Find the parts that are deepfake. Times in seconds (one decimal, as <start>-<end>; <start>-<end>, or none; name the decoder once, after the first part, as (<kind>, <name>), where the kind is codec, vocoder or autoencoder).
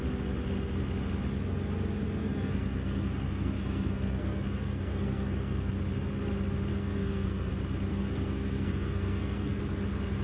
2.2-5.7 (codec, SNAC); 6.7-7.5; 7.9-9.6